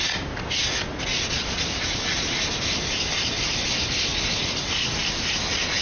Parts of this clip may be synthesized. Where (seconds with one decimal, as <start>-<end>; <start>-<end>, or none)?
1.1-1.7

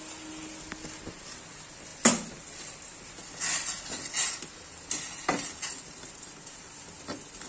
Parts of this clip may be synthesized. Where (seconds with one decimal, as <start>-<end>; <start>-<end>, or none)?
none